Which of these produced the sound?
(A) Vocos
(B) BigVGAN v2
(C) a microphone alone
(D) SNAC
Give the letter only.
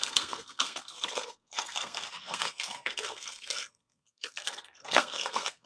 D